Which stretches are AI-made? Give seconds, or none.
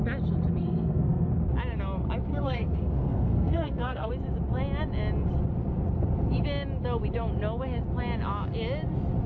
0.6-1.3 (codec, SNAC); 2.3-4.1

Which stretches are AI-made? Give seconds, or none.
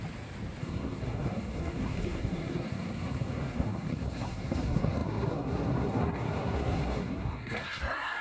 0.6-8.2 (codec, SNAC)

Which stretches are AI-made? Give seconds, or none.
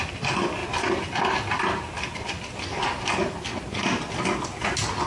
none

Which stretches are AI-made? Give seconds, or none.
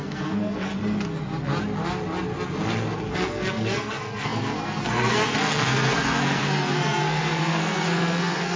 0.0-0.7 (codec, SNAC); 3.1-8.6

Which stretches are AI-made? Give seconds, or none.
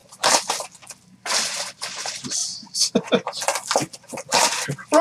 none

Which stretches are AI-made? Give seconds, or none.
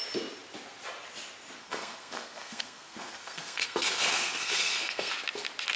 1.6-5.1 (codec, SNAC)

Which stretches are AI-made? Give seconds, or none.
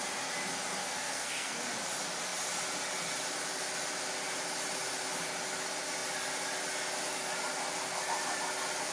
0.8-1.6 (codec, SNAC)